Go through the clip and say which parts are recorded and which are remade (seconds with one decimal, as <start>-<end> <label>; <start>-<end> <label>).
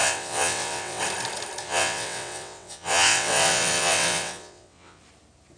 0.0-1.0 remade; 1.0-1.6 recorded; 1.6-5.0 remade; 5.0-5.6 recorded